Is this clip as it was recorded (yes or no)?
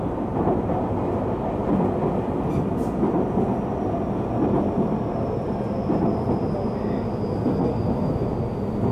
yes